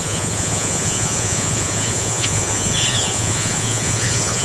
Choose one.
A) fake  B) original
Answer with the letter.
A